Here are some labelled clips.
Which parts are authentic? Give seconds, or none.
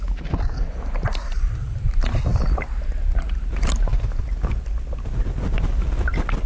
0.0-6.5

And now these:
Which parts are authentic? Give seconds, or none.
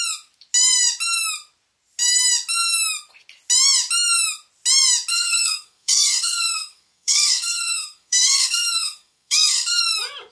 0.0-5.1; 9.8-10.3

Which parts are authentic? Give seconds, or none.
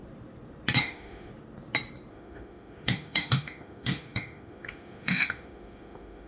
0.0-0.8; 1.3-2.1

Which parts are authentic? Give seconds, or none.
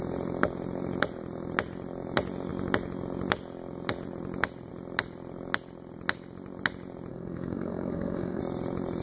0.0-7.1; 8.4-9.0